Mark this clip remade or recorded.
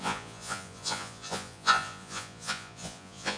remade